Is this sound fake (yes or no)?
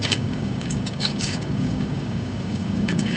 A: yes